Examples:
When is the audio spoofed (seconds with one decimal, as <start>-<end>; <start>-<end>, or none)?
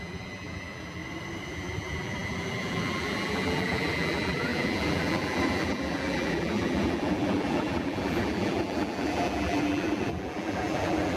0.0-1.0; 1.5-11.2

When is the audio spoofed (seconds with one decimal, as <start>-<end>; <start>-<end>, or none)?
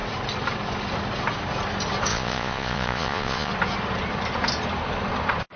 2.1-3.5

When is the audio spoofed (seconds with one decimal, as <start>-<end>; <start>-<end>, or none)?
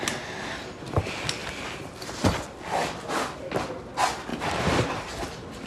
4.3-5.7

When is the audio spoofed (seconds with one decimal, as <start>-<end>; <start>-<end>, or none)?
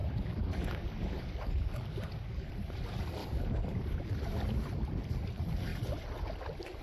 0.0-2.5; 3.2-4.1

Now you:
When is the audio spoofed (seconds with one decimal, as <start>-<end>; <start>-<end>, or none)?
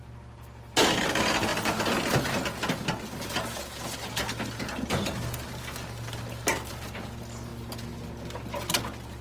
none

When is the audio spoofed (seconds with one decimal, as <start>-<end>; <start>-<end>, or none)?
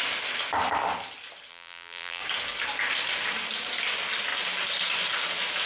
1.5-2.2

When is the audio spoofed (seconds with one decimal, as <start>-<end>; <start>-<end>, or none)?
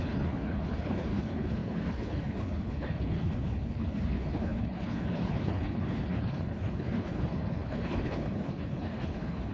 0.0-9.5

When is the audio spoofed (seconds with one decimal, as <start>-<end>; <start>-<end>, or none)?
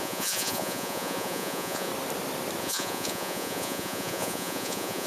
0.0-1.9; 2.6-5.1